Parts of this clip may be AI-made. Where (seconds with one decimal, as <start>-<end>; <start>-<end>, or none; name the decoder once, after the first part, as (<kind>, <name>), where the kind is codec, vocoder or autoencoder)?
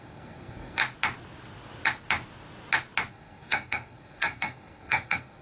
0.0-0.8 (codec, SNAC); 3.1-5.4